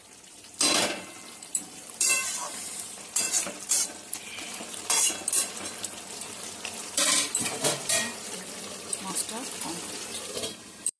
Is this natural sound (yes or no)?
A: no